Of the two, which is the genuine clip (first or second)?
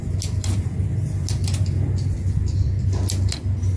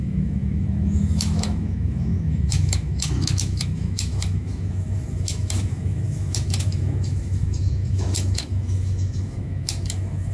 first